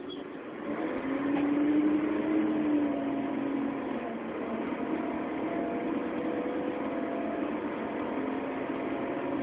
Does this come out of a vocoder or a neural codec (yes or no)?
no